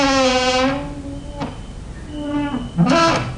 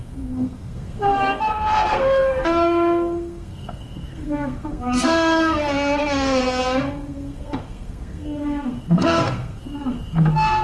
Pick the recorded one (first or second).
first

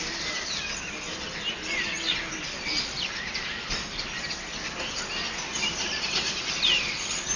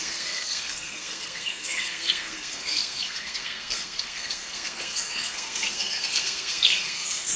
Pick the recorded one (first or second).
first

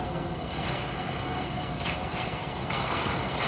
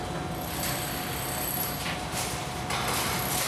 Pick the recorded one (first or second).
second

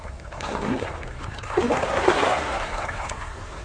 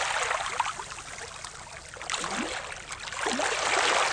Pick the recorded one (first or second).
second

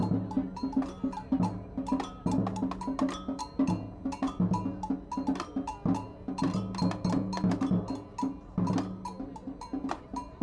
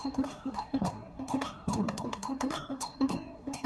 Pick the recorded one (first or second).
first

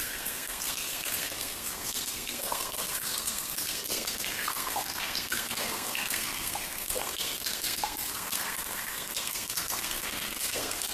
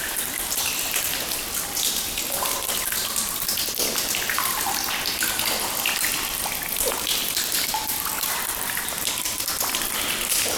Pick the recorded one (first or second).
second